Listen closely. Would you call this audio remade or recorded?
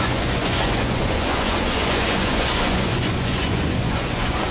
remade